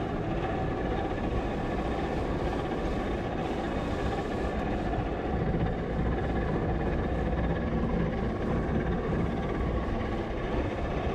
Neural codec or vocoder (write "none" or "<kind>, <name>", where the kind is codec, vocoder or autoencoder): none